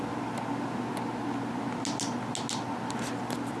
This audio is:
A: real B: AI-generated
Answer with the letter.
A